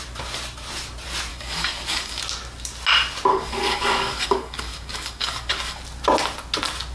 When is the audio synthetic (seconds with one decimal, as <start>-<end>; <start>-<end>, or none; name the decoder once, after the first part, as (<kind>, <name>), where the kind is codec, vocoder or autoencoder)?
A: 1.3-2.2 (codec, DAC); 3.3-5.8